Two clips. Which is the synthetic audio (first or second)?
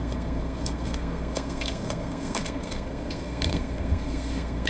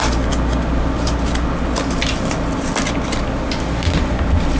first